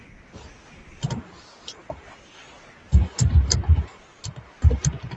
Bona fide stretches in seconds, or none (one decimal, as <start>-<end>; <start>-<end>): 0.0-5.2